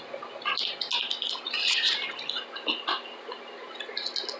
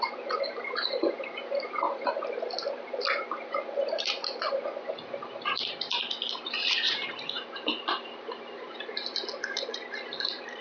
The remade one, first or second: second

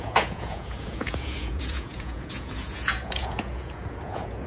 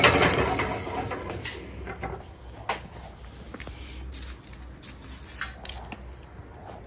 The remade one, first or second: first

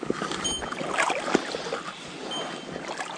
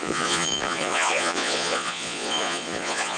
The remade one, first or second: second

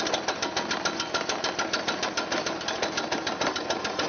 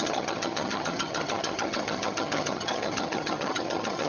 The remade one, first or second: second